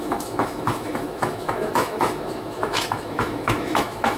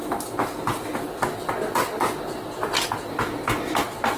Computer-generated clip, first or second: first